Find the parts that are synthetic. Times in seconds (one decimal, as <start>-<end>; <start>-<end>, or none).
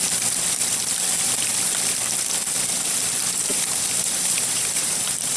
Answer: 3.5-5.4